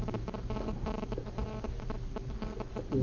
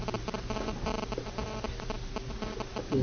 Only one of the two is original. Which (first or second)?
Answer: second